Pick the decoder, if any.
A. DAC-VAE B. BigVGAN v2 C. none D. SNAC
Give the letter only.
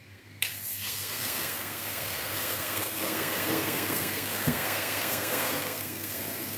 D